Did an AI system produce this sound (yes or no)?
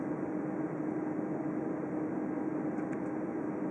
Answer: no